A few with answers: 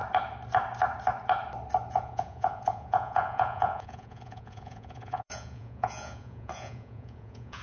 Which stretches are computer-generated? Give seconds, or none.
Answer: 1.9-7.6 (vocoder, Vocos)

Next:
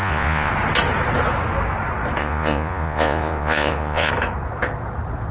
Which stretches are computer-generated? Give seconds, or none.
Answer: 0.0-0.5 (vocoder, Vocos); 2.2-4.1

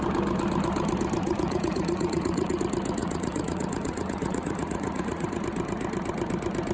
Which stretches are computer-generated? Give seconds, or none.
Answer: 1.2-2.6 (vocoder, Vocos); 3.0-5.4

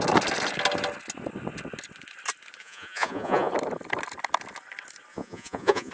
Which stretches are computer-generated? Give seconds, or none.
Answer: 2.6-3.5 (vocoder, Vocos); 5.1-5.9